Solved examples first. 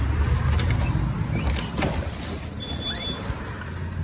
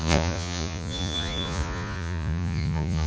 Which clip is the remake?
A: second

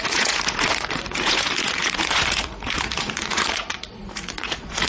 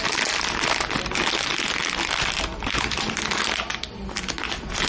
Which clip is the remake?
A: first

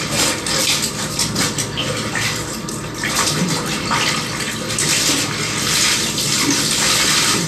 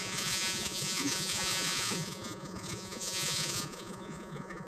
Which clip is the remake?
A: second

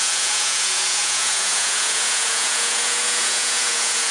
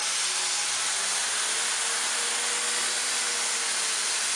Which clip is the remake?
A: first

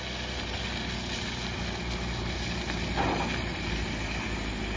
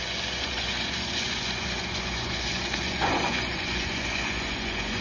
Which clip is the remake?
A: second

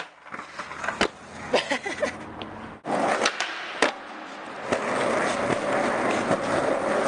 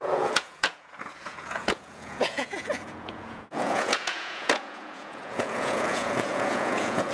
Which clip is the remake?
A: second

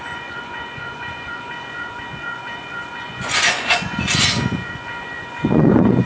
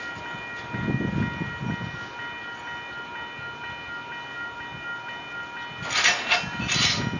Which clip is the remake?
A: first